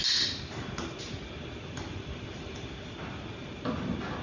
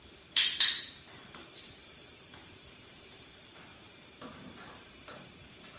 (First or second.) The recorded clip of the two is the first